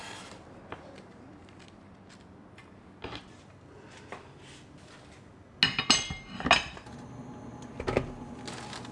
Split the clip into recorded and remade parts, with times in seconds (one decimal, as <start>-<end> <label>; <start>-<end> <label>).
0.0-8.9 recorded